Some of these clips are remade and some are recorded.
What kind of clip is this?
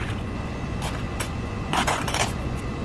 remade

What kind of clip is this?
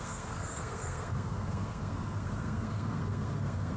remade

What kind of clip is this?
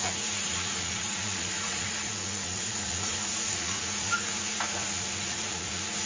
remade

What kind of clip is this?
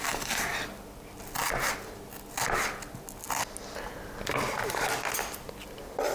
recorded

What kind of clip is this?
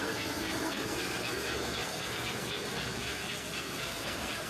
remade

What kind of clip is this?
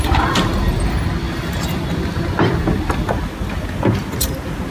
recorded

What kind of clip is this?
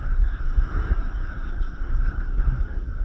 remade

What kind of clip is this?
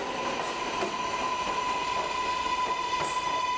recorded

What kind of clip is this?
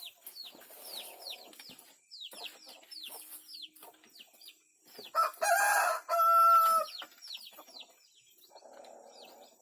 recorded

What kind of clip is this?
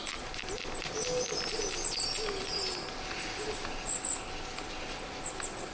recorded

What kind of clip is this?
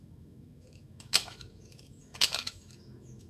remade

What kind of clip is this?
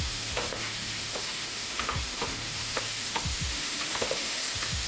remade